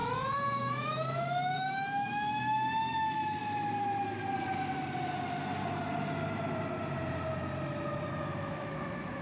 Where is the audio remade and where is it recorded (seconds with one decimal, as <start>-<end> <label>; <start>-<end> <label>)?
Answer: 0.0-3.4 remade; 3.4-8.2 recorded; 8.2-9.2 remade